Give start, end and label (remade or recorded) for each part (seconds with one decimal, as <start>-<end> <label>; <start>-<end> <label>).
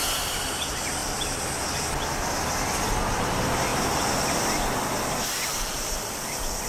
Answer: 0.0-1.0 recorded; 1.0-1.5 remade; 1.5-5.5 recorded; 5.5-6.7 remade